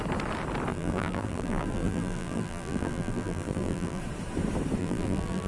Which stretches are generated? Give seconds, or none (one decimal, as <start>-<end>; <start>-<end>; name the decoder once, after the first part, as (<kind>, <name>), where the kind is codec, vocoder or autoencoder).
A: 0.7-4.0 (vocoder, BigVGAN v2); 4.8-5.5

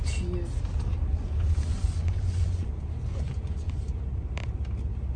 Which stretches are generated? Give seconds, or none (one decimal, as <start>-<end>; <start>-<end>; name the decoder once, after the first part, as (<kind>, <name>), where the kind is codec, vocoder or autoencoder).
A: 1.7-2.7 (vocoder, Vocos); 3.1-3.8

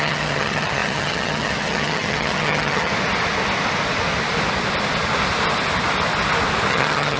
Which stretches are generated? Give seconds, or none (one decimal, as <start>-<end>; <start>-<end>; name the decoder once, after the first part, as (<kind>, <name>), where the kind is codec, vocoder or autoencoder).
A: 0.0-2.9 (vocoder, HiFi-GAN); 6.7-7.2